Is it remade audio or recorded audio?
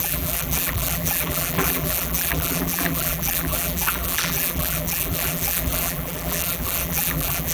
remade